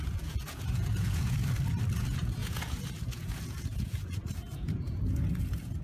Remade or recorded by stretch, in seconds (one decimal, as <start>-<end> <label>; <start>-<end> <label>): 0.0-1.4 remade; 1.4-2.0 recorded; 2.0-5.8 remade